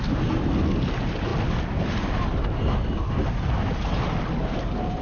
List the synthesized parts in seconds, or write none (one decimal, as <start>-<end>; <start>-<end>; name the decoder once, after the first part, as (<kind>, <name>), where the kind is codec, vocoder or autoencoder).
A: none